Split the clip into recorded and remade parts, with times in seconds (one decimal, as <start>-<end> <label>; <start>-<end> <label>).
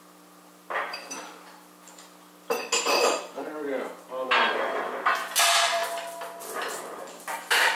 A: 0.0-7.8 recorded